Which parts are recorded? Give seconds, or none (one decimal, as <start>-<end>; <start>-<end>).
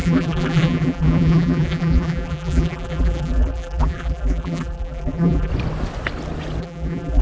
5.5-6.6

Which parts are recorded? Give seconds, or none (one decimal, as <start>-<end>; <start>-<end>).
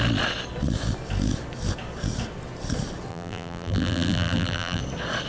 0.0-3.1; 4.8-5.3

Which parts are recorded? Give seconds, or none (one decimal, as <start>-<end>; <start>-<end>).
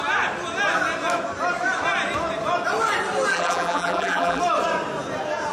0.0-3.3; 4.4-5.5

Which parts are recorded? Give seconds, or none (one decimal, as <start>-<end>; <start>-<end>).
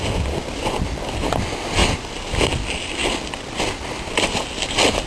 0.0-5.1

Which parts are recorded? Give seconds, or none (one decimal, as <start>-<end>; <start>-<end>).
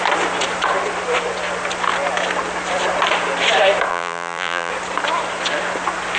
0.0-3.9; 4.7-6.2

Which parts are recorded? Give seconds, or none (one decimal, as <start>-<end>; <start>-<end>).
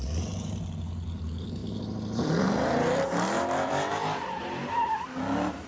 none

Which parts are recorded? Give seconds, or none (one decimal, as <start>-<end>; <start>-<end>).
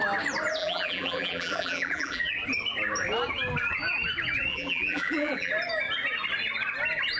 0.0-0.6; 2.3-4.5; 5.5-7.2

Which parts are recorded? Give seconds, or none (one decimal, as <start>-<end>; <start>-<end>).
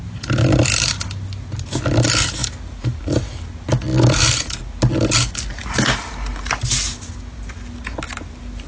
0.0-2.4; 3.1-8.7